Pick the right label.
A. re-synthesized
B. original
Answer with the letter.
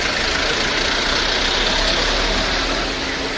B